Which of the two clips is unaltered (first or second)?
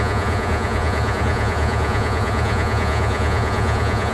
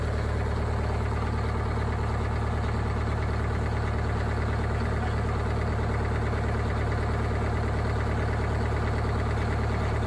second